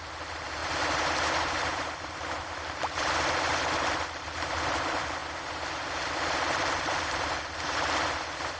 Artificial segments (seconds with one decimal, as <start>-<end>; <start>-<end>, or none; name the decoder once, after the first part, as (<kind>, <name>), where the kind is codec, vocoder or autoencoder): none